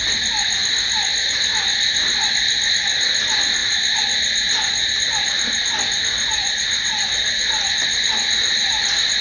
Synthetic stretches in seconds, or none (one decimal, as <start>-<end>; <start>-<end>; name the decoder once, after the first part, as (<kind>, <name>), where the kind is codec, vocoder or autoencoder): none